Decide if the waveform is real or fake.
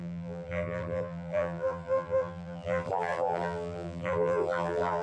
fake